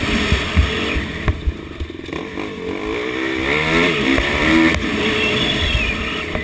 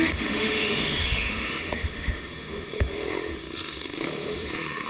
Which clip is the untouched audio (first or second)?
first